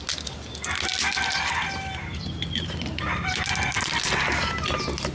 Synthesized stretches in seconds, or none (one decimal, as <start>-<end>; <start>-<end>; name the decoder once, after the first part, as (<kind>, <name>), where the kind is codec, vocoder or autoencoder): none